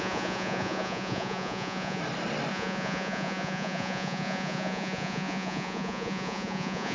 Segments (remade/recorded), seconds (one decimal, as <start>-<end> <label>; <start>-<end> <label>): 0.0-2.0 remade; 2.0-2.5 recorded; 2.5-6.9 remade